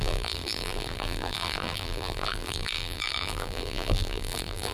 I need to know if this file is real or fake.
fake